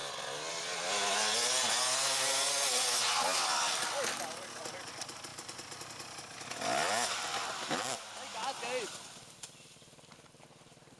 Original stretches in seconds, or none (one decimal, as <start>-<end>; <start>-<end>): 0.0-5.3; 5.8-11.0